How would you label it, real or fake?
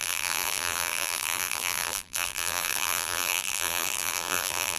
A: fake